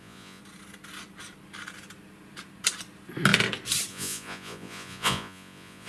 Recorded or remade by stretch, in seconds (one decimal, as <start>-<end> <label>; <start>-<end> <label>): 0.0-0.4 remade; 0.4-3.9 recorded; 3.9-5.9 remade